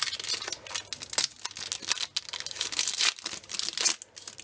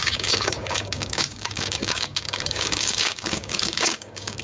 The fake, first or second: second